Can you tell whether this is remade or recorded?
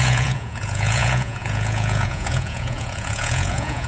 remade